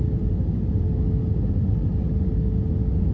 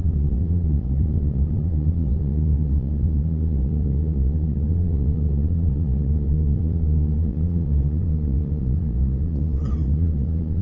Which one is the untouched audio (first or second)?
first